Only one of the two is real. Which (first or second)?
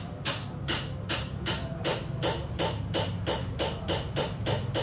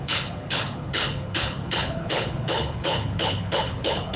first